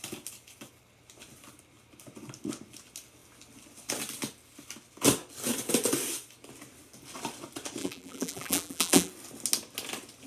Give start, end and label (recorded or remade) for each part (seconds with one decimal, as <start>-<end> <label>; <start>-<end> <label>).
0.0-7.8 recorded; 7.8-9.1 remade; 9.1-10.3 recorded